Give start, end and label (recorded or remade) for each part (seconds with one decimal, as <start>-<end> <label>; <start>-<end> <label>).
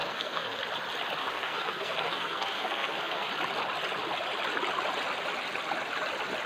0.0-0.6 remade; 0.6-1.2 recorded; 1.2-3.3 remade; 3.3-6.5 recorded